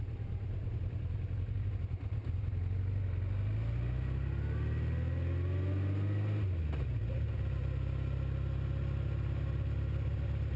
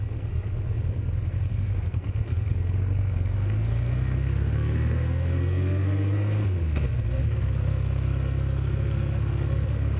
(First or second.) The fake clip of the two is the second